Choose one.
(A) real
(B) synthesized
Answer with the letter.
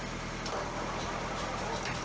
A